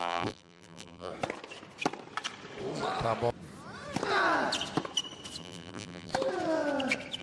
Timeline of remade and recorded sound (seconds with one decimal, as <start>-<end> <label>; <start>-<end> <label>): 0.0-1.1 remade; 1.1-5.4 recorded; 5.4-6.1 remade; 6.1-7.2 recorded

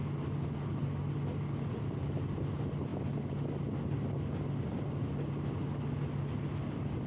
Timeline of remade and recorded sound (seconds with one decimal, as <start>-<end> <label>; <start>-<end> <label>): 0.0-7.1 recorded

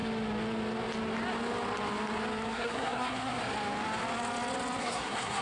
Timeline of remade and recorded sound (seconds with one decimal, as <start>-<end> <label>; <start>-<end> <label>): 0.0-2.5 recorded; 2.5-3.4 remade; 3.4-4.8 recorded; 4.8-5.4 remade

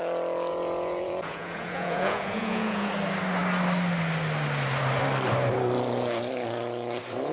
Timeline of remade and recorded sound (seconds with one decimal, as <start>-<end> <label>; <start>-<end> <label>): 0.0-0.5 recorded; 0.5-2.9 remade; 2.9-7.3 recorded

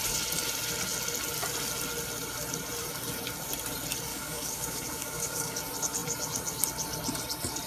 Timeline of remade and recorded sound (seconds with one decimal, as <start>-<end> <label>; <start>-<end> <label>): 0.0-4.1 recorded; 4.1-5.6 remade; 5.6-7.7 recorded

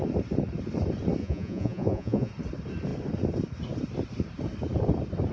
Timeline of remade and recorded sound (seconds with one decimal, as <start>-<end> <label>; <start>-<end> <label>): 0.0-1.2 recorded; 1.2-2.3 remade; 2.3-5.3 recorded

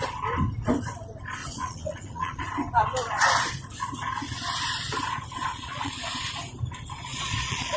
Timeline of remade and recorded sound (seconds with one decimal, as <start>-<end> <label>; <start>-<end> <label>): 0.0-1.4 recorded; 1.4-2.5 remade; 2.5-5.5 recorded; 5.5-6.1 remade; 6.1-7.1 recorded; 7.1-7.8 remade

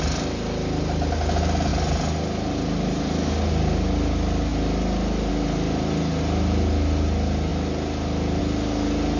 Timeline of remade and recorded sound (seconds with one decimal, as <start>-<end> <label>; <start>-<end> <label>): 0.0-9.2 recorded